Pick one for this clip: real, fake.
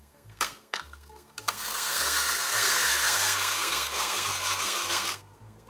fake